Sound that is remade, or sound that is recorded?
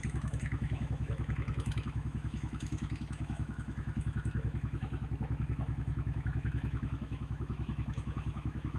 remade